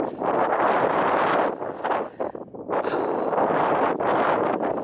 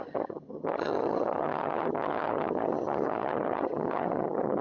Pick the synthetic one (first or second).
second